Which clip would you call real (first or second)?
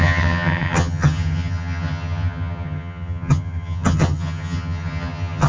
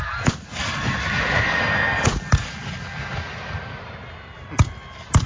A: second